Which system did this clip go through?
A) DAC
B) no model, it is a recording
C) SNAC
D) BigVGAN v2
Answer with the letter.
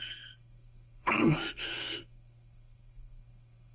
C